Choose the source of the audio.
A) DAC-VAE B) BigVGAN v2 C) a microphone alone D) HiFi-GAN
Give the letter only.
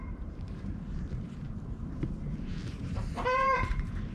B